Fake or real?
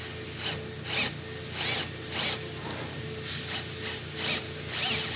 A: real